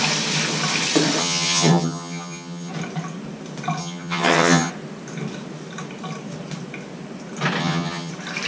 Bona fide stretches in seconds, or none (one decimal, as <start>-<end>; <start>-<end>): 0.0-1.2; 2.7-3.8; 4.7-7.6; 8.1-8.5

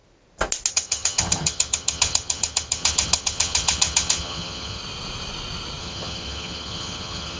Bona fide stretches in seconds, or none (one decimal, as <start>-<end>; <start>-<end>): 0.0-0.7; 4.8-5.8

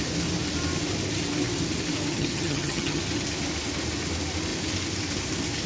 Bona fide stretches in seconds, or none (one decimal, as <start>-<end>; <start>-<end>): 0.0-2.1; 3.0-5.7

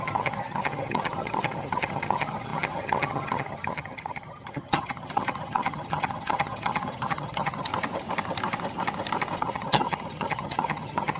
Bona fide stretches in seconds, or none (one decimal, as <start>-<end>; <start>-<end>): 7.7-9.4

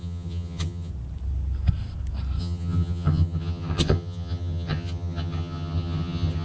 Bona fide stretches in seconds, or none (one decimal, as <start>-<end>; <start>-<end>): 0.9-2.4

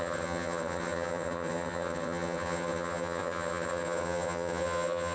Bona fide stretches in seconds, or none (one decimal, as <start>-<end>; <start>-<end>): none